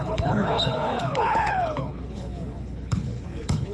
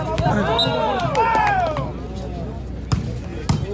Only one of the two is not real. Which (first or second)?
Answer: first